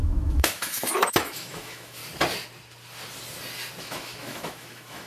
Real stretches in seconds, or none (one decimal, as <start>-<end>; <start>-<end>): 2.0-3.8